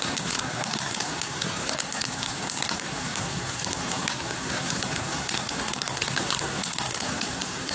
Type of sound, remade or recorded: remade